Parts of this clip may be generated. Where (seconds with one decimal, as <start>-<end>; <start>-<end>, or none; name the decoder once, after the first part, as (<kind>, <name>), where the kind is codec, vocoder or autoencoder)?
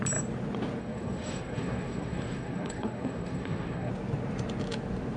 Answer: 0.8-3.9 (codec, SNAC)